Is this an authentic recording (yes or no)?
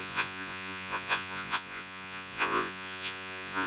no